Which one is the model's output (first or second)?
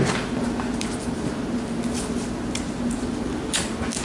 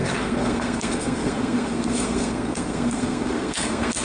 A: second